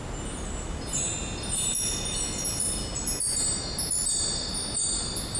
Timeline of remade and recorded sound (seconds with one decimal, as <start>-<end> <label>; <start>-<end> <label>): 0.0-5.4 recorded